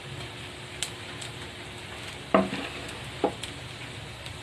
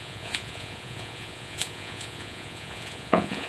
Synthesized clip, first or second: second